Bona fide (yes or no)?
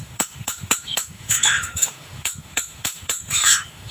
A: no